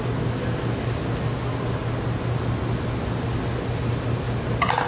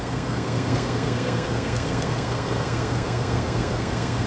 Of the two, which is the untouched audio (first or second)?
first